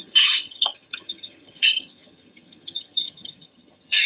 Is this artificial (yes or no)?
yes